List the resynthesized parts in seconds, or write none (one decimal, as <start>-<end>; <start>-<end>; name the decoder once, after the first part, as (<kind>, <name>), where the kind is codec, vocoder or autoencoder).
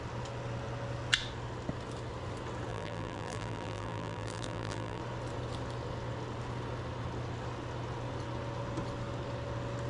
2.7-5.0 (vocoder, BigVGAN v2)